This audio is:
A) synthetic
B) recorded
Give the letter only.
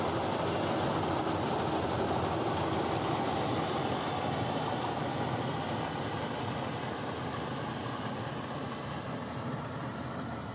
B